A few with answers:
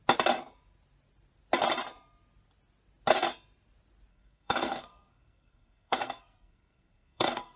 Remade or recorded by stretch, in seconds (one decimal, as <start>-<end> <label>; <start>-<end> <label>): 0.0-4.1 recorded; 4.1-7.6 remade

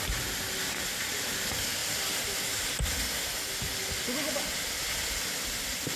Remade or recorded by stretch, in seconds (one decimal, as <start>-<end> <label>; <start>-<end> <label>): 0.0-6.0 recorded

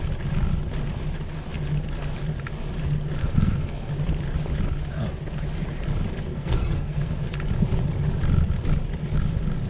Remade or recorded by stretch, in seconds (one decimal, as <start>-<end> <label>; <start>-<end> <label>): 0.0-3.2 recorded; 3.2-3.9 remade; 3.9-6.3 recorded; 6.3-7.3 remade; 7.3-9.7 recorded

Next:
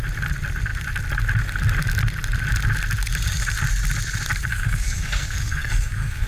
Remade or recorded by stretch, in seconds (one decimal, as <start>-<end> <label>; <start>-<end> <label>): 0.0-4.5 recorded; 4.5-6.3 remade

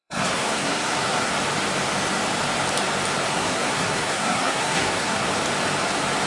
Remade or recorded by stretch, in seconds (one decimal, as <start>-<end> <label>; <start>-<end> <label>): 0.0-1.3 remade; 1.3-3.3 recorded; 3.3-5.3 remade; 5.3-6.3 recorded

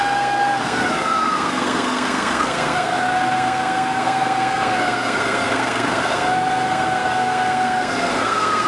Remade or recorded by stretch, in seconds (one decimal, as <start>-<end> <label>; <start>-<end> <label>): 0.0-8.7 remade